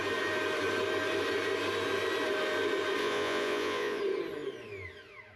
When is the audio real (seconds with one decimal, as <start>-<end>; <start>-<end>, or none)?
0.0-3.0; 4.0-5.4